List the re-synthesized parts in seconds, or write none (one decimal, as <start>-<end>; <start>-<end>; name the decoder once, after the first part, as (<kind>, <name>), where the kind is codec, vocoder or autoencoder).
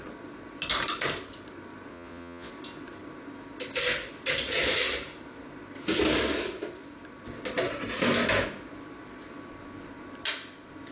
1.9-2.5 (vocoder, Vocos)